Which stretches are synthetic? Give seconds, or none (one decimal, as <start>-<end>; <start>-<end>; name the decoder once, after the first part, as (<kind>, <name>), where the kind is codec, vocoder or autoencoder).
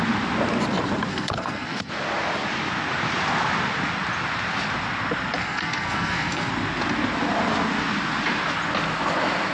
1.1-1.9 (codec, SNAC); 5.4-6.5